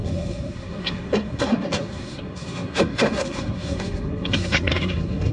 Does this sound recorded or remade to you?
remade